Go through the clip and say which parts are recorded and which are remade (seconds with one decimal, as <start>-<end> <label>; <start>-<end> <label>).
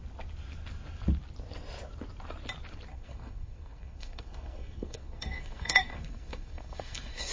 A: 0.0-2.9 recorded; 2.9-7.3 remade